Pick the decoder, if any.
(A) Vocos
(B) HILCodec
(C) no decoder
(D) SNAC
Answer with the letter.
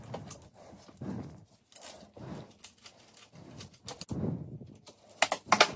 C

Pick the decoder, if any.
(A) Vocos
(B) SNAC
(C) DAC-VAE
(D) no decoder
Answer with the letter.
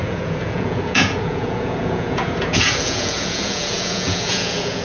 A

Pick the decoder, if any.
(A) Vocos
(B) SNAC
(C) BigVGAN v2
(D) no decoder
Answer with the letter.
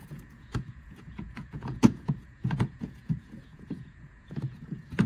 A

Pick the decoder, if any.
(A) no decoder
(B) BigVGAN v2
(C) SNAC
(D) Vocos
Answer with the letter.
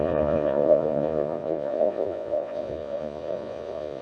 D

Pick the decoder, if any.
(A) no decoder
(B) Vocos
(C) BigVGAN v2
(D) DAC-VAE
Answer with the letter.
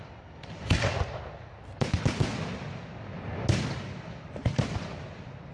A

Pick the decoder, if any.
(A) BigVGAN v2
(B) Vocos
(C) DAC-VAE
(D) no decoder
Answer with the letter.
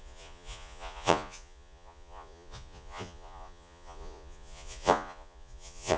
B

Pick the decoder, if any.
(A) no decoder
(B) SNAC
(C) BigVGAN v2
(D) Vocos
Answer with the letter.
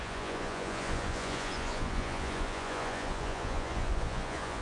D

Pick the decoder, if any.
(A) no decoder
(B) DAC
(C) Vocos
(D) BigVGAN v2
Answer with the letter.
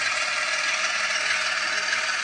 A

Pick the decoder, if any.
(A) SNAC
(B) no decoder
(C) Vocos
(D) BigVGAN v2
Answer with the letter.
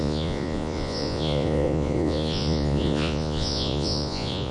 C